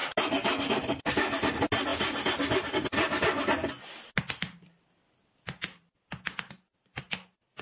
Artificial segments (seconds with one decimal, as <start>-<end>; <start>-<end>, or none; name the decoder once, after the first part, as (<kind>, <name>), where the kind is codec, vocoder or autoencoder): none